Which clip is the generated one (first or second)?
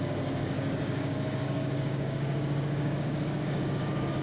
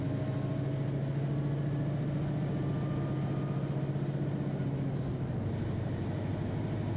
first